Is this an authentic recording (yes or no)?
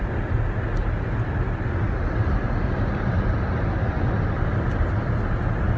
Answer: yes